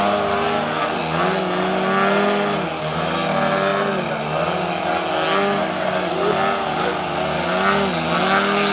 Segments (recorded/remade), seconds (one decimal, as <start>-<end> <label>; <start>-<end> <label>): 0.0-8.7 recorded